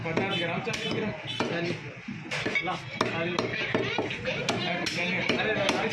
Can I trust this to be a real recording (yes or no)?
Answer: yes